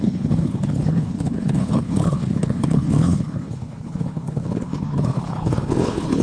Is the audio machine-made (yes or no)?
yes